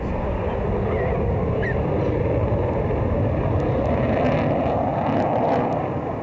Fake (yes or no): no